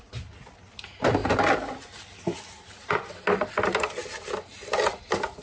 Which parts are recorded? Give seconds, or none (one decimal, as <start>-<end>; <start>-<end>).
0.0-5.4